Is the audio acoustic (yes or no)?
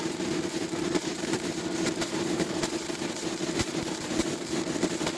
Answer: no